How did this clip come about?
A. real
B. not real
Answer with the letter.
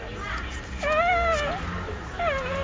A